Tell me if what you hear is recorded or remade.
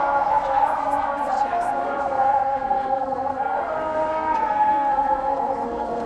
remade